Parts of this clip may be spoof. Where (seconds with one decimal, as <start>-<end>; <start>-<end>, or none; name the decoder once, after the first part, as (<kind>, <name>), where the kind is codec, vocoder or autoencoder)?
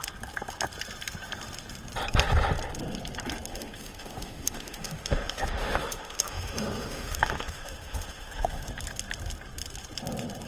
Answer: 3.5-8.7 (autoencoder, DAC-VAE)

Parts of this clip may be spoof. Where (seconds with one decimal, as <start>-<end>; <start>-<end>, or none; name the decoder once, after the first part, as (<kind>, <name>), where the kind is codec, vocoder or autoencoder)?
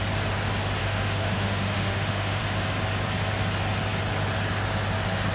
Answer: 0.8-2.4 (autoencoder, DAC-VAE)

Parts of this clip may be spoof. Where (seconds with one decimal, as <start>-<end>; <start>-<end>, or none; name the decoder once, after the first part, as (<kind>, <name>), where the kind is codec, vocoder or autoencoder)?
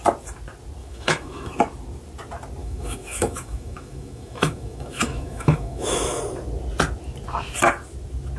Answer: 0.8-1.5 (autoencoder, DAC-VAE); 2.6-6.2